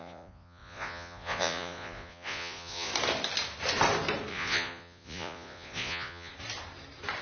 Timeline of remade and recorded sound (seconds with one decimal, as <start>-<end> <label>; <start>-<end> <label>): 0.0-2.9 remade; 2.9-4.3 recorded; 4.3-6.3 remade; 6.3-7.2 recorded